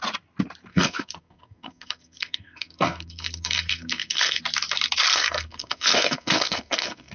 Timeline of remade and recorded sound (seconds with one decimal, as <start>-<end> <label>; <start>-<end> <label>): 0.0-0.7 recorded; 0.7-4.4 remade; 4.4-5.1 recorded; 5.1-7.1 remade